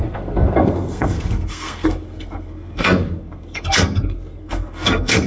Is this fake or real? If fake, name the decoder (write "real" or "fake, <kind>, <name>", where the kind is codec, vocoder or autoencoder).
fake, codec, SNAC